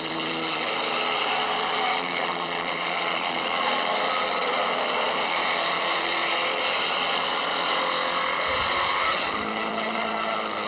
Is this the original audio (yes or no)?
no